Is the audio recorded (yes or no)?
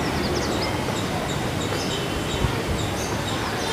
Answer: yes